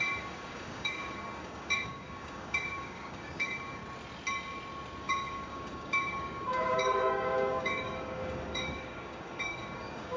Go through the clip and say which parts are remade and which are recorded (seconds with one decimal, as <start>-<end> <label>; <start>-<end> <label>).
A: 0.0-3.8 remade; 3.8-5.0 recorded; 5.0-10.2 remade